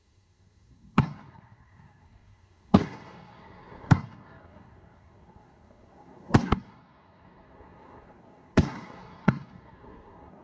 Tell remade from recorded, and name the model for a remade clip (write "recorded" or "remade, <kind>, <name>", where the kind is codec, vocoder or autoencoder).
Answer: remade, codec, SNAC